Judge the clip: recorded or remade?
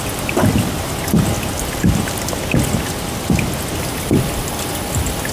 recorded